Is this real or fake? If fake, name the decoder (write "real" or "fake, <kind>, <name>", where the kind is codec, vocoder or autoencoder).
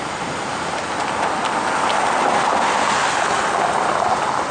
real